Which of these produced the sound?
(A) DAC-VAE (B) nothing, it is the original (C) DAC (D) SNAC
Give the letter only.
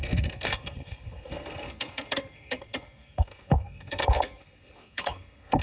D